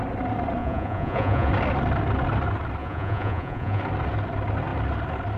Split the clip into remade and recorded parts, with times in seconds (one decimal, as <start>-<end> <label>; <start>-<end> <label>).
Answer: 0.0-0.6 recorded; 0.6-1.5 remade; 1.5-2.8 recorded; 2.8-3.8 remade; 3.8-5.4 recorded